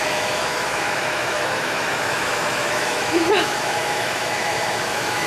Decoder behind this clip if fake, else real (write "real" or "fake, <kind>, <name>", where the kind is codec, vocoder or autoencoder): fake, autoencoder, DAC-VAE